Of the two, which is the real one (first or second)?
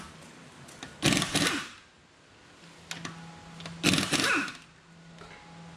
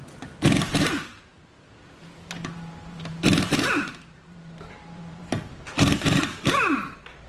first